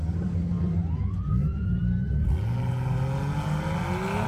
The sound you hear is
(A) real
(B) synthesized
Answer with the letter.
A